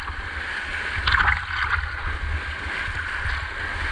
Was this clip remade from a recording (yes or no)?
no